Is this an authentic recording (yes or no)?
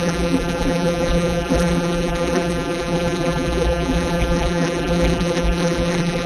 no